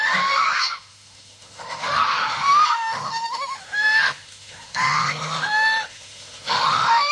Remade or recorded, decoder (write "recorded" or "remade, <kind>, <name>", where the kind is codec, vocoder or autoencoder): remade, autoencoder, DAC-VAE